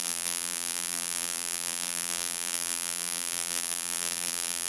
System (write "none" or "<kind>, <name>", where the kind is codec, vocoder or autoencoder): vocoder, BigVGAN v2